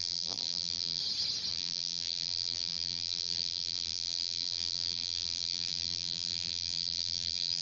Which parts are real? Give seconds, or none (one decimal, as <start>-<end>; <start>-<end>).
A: 1.0-1.5